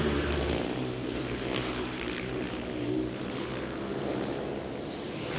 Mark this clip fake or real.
fake